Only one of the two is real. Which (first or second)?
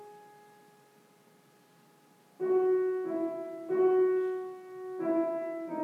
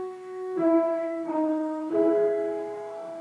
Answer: first